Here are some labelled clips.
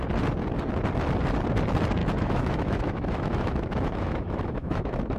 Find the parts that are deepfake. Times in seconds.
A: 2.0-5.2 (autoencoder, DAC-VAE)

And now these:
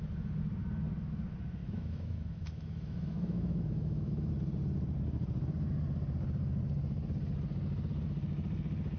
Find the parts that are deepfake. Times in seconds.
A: 1.6-4.3 (autoencoder, DAC-VAE)

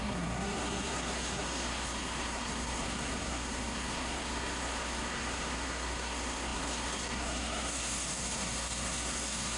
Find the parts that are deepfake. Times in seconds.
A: 0.0-9.6 (codec, SNAC)